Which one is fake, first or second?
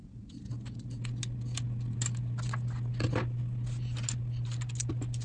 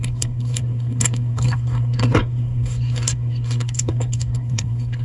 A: second